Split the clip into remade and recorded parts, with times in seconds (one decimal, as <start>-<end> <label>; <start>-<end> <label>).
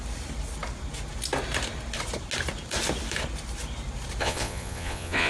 0.0-4.2 recorded; 4.2-5.3 remade